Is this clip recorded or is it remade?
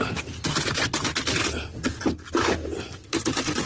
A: recorded